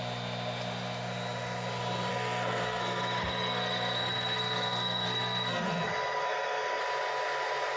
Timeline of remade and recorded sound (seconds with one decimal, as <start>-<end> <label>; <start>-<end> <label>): 0.0-2.1 recorded; 2.1-6.8 remade; 6.8-7.8 recorded